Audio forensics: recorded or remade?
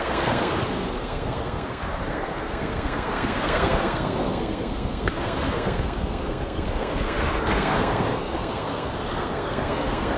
remade